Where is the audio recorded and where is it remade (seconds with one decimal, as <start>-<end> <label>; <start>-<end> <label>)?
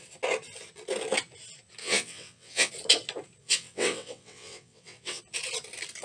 0.0-1.8 recorded; 1.8-2.7 remade; 2.7-3.4 recorded; 3.4-5.2 remade; 5.2-6.0 recorded